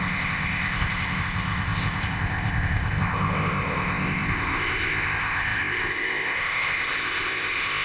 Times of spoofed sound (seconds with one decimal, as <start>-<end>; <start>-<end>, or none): 0.0-7.8